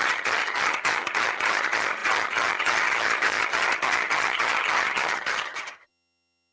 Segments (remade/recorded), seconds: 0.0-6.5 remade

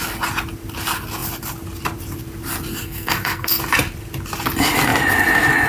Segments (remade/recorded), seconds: 0.0-2.7 recorded; 2.7-3.6 remade; 3.6-5.7 recorded

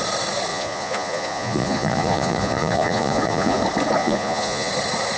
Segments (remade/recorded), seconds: 0.0-0.5 recorded; 0.5-3.6 remade; 3.6-4.0 recorded; 4.0-4.7 remade; 4.7-5.2 recorded

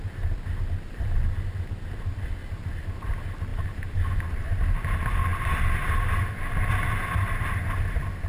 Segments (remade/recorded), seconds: 0.0-3.5 recorded; 3.5-4.3 remade; 4.3-8.3 recorded

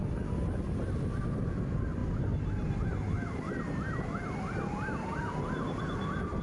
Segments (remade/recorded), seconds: 0.0-6.4 recorded